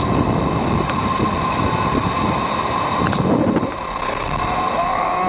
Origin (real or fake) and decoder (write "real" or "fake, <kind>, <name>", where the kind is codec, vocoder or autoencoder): real